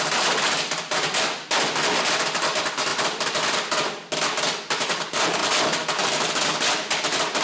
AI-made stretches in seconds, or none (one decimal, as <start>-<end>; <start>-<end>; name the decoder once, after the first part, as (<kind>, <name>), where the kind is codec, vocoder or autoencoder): 2.9-3.7 (vocoder, BigVGAN v2); 5.4-6.5